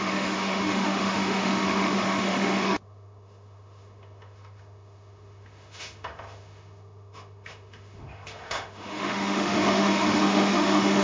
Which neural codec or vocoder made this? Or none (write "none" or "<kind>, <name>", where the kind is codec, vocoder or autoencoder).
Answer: autoencoder, DAC-VAE